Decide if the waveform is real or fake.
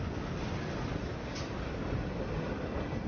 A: real